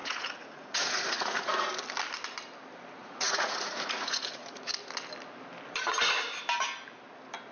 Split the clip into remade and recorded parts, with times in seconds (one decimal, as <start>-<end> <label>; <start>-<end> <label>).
0.0-1.7 remade; 1.7-3.0 recorded; 3.0-4.7 remade; 4.7-7.5 recorded